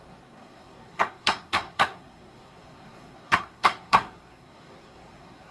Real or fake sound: fake